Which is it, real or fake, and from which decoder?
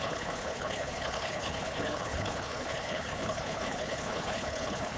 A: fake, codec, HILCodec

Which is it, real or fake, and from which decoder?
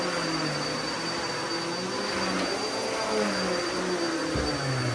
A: real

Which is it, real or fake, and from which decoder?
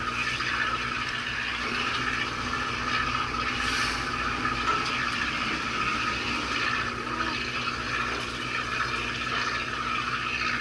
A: real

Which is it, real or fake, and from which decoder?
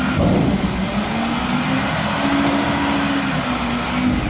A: real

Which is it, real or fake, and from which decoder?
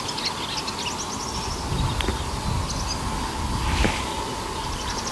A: real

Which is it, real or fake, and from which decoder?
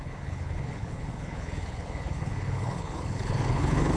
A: fake, codec, HILCodec